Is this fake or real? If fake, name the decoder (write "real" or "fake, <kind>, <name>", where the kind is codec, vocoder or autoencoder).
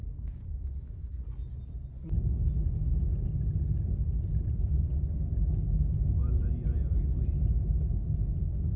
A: real